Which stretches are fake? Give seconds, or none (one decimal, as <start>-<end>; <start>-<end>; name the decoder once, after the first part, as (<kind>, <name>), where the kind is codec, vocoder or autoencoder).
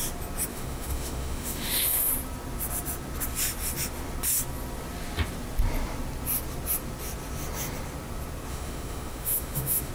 0.5-2.1 (autoencoder, DAC-VAE); 8.5-9.9